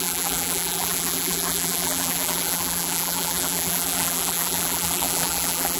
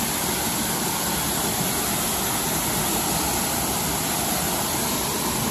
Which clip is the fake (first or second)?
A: first